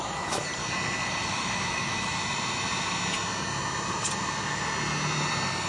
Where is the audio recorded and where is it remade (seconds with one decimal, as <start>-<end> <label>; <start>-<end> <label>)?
0.0-0.5 remade; 0.5-1.2 recorded; 1.2-2.2 remade; 2.2-5.7 recorded